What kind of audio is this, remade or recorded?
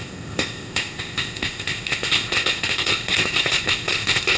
remade